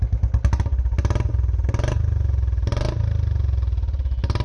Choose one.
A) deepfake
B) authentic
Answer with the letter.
B